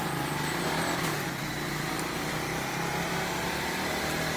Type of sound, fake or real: real